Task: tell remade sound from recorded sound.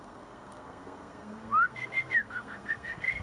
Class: remade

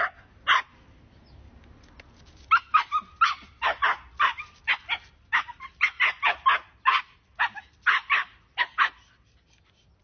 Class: recorded